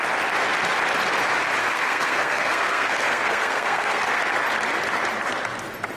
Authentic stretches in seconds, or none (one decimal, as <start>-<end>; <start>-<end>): 0.0-1.6; 4.2-6.0